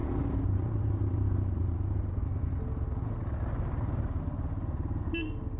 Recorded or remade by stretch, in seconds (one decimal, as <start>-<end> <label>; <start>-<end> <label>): 0.0-2.4 remade; 2.4-5.6 recorded